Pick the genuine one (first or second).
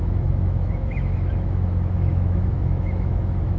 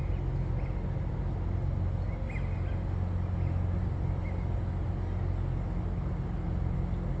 second